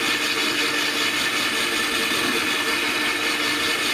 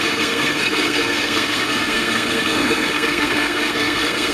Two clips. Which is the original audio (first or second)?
first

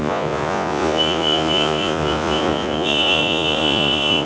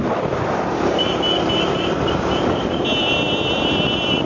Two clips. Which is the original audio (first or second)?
second